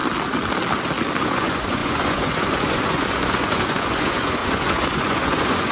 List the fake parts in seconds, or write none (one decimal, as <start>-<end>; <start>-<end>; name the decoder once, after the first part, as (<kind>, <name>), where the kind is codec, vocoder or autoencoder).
1.2-5.7 (vocoder, Vocos)